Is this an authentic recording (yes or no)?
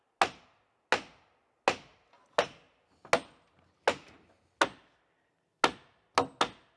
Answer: yes